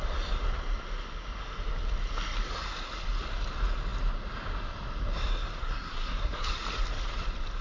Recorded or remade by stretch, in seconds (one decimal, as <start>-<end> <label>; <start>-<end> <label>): 0.0-5.6 recorded; 5.6-6.5 remade; 6.5-7.6 recorded